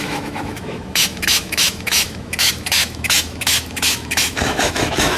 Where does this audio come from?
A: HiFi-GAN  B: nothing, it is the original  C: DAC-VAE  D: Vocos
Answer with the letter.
C